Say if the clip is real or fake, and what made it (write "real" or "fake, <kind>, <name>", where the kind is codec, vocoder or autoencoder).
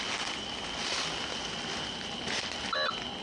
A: real